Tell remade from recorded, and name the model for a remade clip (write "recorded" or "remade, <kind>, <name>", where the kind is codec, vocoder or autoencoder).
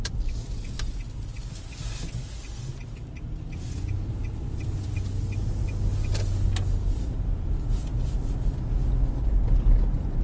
recorded